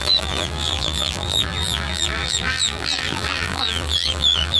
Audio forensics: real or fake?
fake